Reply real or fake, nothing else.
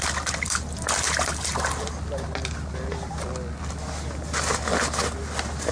real